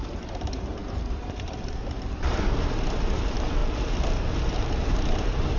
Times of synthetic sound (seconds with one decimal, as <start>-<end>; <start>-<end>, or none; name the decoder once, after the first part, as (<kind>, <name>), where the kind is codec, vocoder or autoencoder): 0.0-3.6 (vocoder, BigVGAN v2); 4.4-5.6